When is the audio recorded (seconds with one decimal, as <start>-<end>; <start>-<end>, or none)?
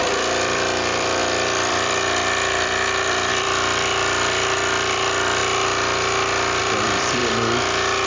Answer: 5.4-6.6; 7.2-8.1